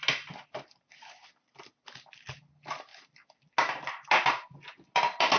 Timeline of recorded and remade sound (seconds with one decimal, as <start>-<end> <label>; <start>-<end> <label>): 0.0-5.4 recorded